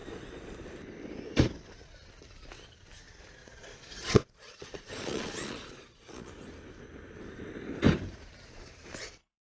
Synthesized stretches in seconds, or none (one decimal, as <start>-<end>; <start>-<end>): 3.4-6.3